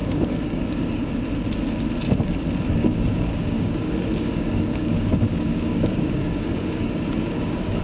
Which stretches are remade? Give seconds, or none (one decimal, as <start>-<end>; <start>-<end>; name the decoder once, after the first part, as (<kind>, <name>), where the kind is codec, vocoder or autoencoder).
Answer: 0.0-1.1 (codec, DAC); 2.8-7.8